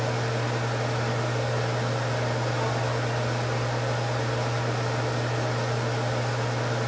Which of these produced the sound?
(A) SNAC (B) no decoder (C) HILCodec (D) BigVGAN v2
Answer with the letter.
B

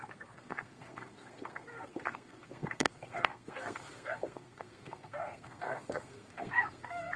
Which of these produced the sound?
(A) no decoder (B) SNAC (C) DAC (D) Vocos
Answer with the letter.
B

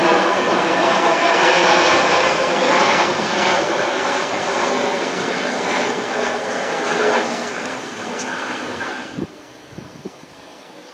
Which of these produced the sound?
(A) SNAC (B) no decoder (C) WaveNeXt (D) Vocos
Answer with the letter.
A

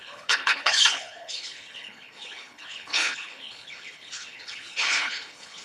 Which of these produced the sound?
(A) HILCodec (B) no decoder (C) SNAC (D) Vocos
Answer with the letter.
A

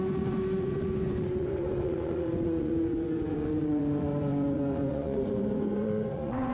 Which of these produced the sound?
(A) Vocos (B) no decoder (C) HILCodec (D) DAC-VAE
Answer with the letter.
A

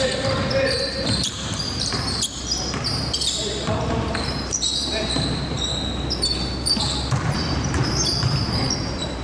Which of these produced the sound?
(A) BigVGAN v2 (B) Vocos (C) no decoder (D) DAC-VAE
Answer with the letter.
A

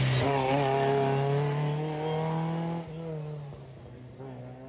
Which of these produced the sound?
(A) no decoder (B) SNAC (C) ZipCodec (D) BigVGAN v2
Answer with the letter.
A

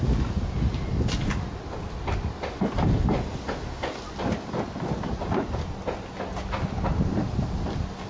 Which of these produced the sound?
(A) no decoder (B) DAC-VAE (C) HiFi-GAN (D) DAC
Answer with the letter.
A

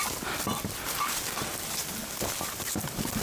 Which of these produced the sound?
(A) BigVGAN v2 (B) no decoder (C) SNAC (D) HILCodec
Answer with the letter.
B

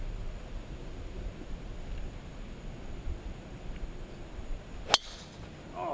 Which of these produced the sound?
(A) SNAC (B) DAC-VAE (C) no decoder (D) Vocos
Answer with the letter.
C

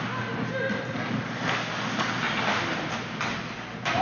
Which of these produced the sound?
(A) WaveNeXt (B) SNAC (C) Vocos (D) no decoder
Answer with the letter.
D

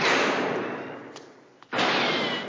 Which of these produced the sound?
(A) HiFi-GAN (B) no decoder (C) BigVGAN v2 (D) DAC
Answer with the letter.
B